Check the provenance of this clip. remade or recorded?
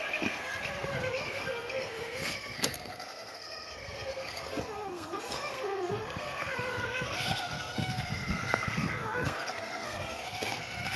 remade